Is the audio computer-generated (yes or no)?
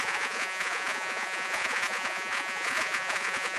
yes